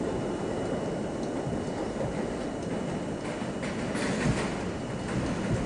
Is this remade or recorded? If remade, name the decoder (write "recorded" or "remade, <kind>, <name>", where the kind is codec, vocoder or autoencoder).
recorded